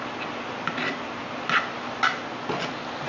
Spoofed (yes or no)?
no